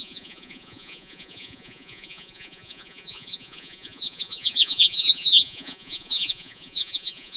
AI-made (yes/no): yes